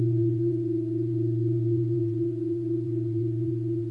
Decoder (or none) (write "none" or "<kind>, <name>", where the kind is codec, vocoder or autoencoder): vocoder, Vocos